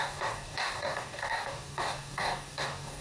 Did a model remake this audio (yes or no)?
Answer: yes